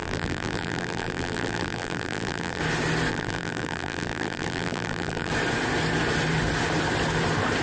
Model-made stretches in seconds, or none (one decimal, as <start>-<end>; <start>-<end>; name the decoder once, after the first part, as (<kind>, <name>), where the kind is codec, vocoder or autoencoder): 0.0-2.6 (vocoder, BigVGAN v2); 3.1-5.3